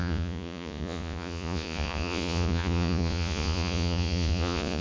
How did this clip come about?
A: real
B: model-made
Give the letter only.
B